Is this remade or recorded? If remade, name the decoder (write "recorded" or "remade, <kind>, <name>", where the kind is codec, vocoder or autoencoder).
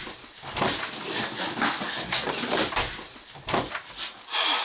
recorded